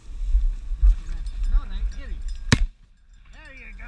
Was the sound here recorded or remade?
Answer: recorded